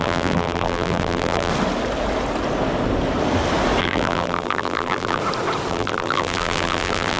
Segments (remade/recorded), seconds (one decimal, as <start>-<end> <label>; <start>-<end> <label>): 0.0-1.5 remade; 1.5-3.8 recorded; 3.8-5.2 remade; 5.2-5.7 recorded; 5.7-7.2 remade